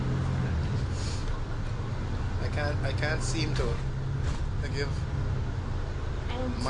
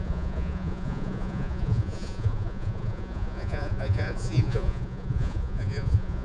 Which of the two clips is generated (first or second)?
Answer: second